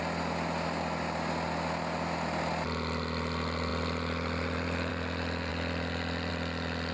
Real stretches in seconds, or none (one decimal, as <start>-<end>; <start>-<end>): 0.0-6.9